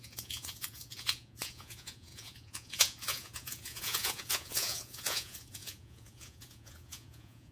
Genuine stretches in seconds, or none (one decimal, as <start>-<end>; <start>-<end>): none